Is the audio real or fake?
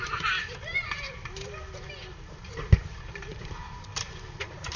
fake